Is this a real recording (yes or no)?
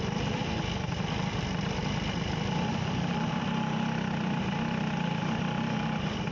yes